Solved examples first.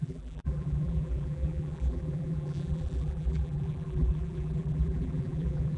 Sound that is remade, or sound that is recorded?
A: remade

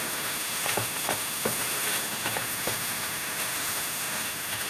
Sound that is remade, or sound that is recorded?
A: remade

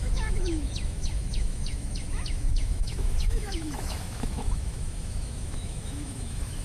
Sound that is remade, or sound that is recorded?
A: remade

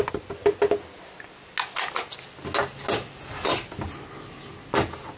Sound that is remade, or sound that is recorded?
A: recorded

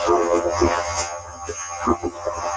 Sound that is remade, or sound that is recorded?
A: remade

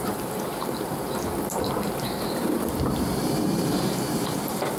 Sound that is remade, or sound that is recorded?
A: remade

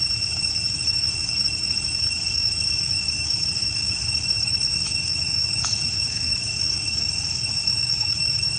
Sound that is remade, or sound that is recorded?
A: remade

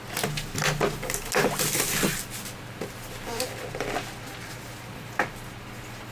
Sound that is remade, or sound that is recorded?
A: recorded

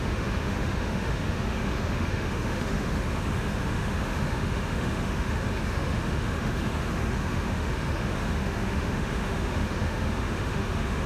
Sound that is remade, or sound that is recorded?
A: remade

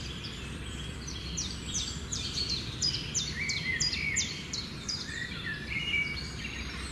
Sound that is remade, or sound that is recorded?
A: remade